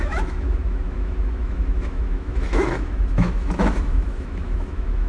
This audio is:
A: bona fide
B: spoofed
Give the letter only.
B